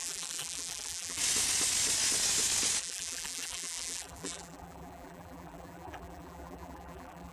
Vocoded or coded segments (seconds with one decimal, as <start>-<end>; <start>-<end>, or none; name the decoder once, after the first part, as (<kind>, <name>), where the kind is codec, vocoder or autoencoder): 0.0-1.2 (vocoder, BigVGAN v2); 2.8-7.3